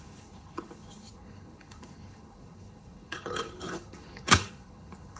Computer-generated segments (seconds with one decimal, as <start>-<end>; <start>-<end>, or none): 0.0-5.2